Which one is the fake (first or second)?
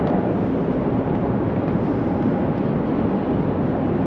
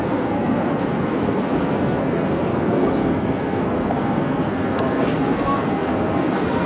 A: second